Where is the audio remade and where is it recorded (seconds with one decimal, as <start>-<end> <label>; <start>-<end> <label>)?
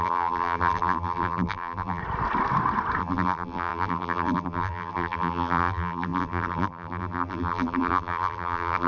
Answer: 0.0-2.0 remade; 2.0-3.0 recorded; 3.0-8.9 remade